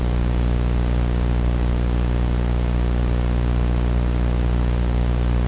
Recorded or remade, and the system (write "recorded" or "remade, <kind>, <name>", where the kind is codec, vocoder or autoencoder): recorded